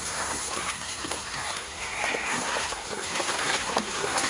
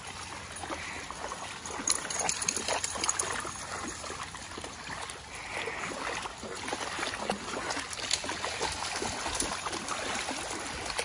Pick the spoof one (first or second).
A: first